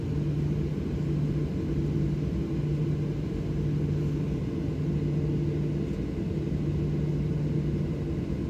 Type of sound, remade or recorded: recorded